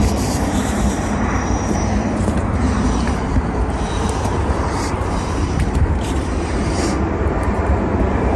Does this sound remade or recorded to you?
remade